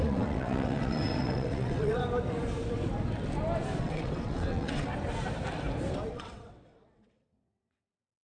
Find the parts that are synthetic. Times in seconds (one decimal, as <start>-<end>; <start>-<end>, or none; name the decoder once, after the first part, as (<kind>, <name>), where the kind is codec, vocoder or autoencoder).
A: 0.0-2.0 (vocoder, WaveNeXt); 3.8-4.9; 6.1-8.2